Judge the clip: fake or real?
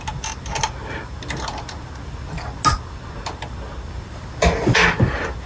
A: real